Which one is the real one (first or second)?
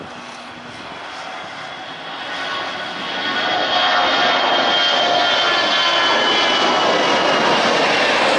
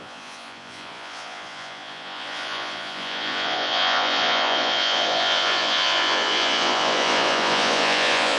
first